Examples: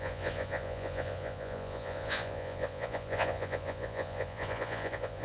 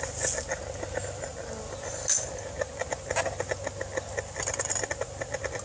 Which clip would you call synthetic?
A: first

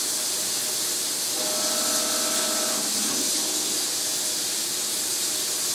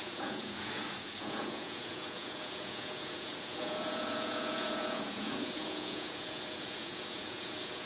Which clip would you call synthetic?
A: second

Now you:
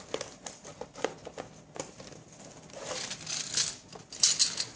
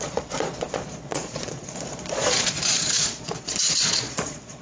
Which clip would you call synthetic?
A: second